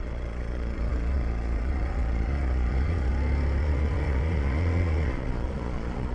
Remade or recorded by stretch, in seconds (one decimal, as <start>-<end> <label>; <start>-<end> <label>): 0.0-3.1 remade; 3.1-3.6 recorded; 3.6-6.1 remade